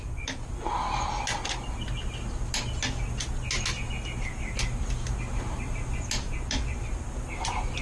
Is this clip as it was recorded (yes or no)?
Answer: yes